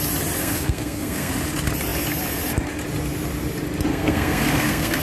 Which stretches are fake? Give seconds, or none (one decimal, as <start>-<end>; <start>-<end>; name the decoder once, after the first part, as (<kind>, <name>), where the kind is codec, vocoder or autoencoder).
0.4-1.3 (codec, SNAC); 3.9-5.0